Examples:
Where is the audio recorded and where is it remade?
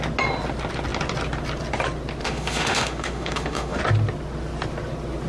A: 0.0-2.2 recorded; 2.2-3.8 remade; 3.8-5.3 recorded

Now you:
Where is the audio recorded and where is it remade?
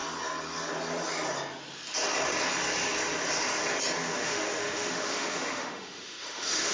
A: 0.0-4.0 recorded; 4.0-6.7 remade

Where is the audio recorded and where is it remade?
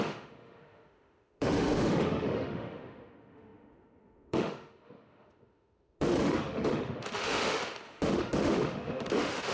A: 0.0-9.5 remade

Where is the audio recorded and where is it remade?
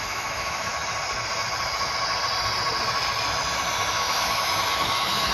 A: 0.0-0.7 remade; 0.7-3.9 recorded; 3.9-5.3 remade